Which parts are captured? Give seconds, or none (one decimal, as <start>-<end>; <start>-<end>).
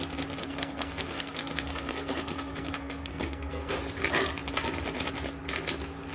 0.0-0.4; 3.7-6.1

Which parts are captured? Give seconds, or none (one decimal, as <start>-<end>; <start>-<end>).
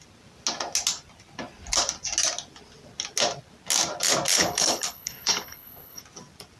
0.0-4.3; 6.0-6.6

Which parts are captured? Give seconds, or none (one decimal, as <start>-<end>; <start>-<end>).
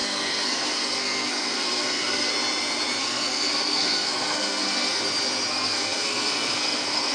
2.3-3.0; 5.0-5.5